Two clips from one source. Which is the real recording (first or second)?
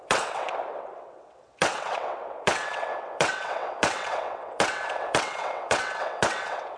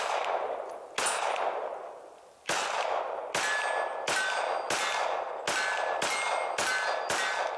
second